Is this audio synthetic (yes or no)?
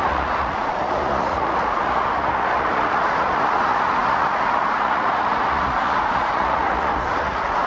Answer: yes